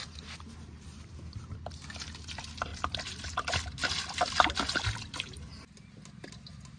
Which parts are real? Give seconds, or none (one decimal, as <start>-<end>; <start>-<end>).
0.0-6.8